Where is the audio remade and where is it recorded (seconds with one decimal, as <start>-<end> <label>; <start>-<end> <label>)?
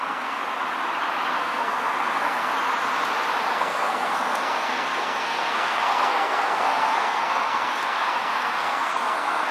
0.0-0.4 remade; 0.4-1.3 recorded; 1.3-2.5 remade; 2.5-3.5 recorded; 3.5-9.5 remade